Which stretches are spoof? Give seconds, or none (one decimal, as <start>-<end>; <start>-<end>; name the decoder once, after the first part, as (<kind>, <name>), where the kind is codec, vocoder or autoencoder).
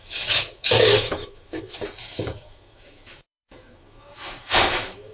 0.0-5.1 (autoencoder, DAC-VAE)